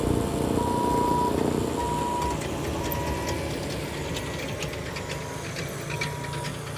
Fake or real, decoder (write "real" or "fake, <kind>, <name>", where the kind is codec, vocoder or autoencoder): real